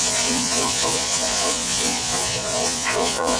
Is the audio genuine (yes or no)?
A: no